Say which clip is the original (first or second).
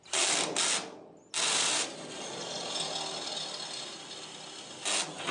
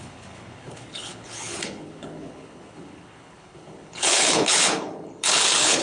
first